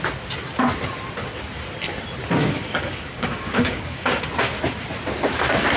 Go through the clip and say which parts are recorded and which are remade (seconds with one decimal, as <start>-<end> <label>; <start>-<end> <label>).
0.0-2.4 recorded; 2.4-4.2 remade; 4.2-5.8 recorded